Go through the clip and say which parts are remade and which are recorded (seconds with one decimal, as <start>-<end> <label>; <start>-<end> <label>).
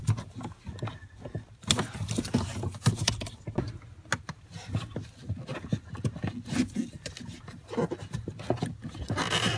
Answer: 0.0-9.6 recorded